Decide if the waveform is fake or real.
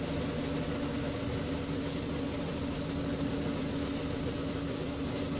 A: real